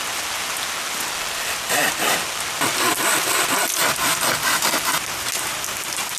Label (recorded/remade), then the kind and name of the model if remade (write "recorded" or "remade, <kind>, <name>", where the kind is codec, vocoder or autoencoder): recorded